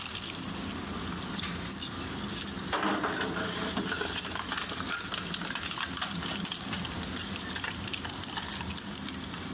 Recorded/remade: recorded